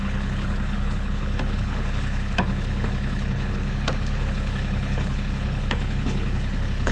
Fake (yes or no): yes